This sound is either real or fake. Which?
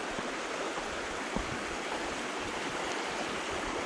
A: fake